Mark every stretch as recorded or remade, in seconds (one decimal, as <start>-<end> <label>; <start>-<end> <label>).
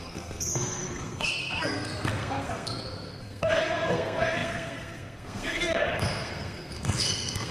0.0-7.5 remade